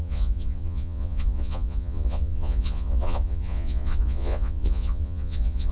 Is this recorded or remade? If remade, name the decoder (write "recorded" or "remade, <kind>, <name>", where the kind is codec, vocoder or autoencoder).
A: remade, vocoder, Vocos